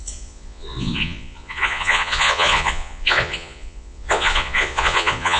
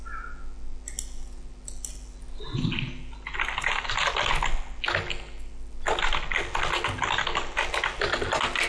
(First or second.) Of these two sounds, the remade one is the first